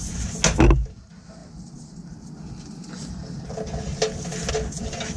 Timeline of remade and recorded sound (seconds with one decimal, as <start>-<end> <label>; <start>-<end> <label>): 0.0-5.2 recorded